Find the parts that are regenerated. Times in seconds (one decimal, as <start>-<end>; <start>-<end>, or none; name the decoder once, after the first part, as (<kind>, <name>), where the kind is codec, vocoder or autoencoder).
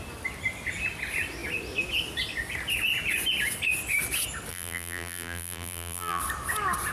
4.5-6.2 (vocoder, BigVGAN v2)